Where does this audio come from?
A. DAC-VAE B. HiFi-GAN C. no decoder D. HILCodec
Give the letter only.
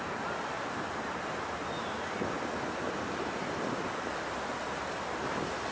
C